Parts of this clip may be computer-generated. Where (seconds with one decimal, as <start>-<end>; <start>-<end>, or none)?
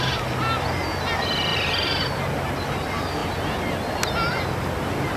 1.5-2.2